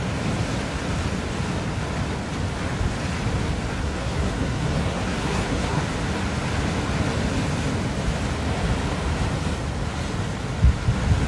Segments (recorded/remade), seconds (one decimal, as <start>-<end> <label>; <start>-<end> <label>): 0.0-3.7 recorded; 3.7-5.8 remade; 5.8-11.3 recorded